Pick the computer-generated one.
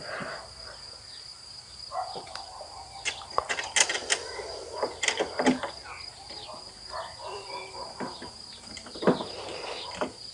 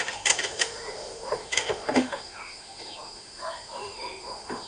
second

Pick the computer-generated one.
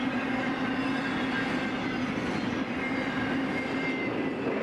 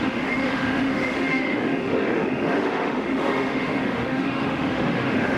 second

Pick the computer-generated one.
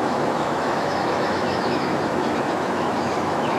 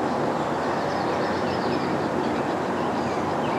first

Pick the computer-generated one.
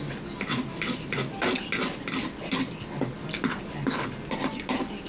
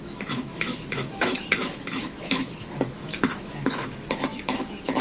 second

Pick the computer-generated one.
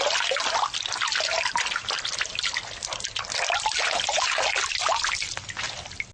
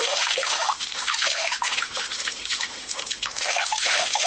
second